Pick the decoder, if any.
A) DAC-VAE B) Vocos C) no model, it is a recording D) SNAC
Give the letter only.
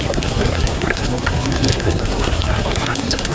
D